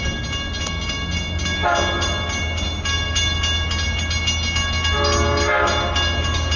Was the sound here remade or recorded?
recorded